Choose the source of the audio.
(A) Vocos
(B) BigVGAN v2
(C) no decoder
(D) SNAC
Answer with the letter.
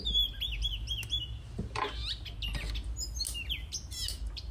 C